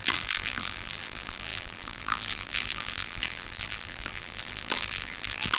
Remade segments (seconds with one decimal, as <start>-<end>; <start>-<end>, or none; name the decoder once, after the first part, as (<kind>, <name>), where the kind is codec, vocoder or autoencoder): 0.0-5.6 (vocoder, BigVGAN v2)